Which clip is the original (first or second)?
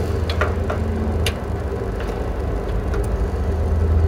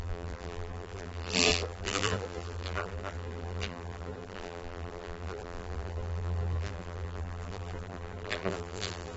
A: first